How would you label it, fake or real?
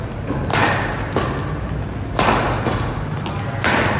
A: real